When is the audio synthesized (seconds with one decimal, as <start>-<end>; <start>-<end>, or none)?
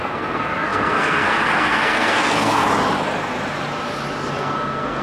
0.0-2.6; 4.4-5.0